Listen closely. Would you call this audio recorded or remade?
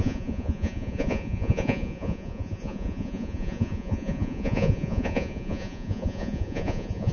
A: remade